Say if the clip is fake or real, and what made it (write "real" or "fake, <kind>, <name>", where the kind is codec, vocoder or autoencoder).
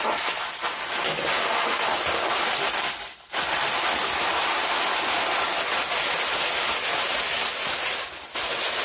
real